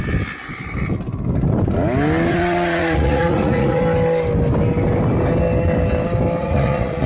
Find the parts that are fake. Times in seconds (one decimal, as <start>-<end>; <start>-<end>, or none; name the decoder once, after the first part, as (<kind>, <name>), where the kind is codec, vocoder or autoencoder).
2.3-3.8 (vocoder, Vocos); 6.4-7.1